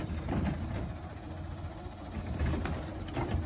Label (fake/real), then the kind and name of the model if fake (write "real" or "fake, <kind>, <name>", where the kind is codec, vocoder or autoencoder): real